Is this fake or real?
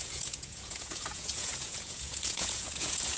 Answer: fake